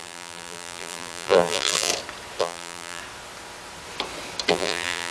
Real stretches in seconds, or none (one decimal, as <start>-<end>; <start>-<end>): 1.9-2.4; 3.0-4.5